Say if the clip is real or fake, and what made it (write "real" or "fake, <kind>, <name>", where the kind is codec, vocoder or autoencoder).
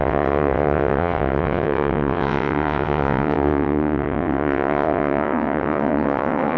fake, vocoder, WaveNeXt